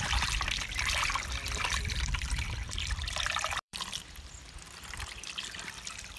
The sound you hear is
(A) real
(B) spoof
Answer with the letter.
B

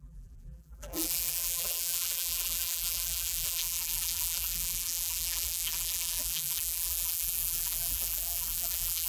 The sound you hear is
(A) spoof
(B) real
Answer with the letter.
A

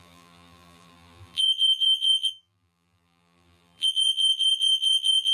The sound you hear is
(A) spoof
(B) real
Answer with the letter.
A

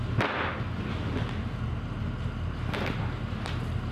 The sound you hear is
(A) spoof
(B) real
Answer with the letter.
B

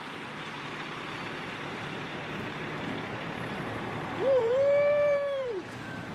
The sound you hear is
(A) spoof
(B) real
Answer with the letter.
A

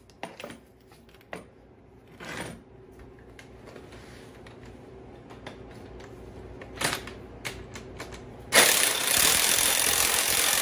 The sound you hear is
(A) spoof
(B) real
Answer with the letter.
B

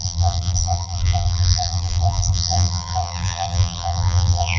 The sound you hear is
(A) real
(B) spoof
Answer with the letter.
B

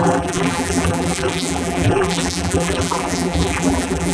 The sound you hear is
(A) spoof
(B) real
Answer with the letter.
A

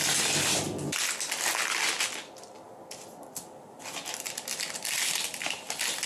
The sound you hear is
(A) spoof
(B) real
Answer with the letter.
B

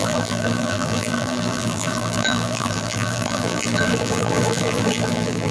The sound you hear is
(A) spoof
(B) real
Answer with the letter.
A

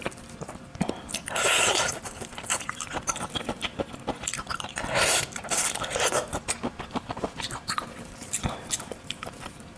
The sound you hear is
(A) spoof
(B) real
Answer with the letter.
A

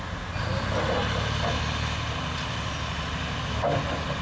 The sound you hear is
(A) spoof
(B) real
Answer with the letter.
B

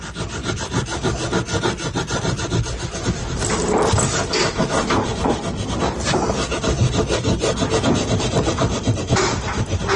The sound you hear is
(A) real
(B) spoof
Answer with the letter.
A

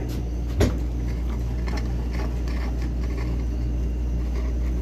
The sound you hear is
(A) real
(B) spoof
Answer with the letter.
A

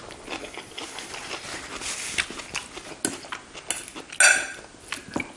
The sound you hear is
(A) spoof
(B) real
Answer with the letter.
B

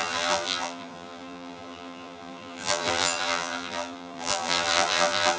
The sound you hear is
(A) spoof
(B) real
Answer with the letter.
A